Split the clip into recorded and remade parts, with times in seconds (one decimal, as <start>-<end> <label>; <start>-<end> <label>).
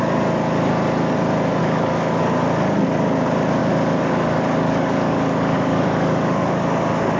0.0-1.6 recorded; 1.6-2.2 remade; 2.2-3.6 recorded; 3.6-7.2 remade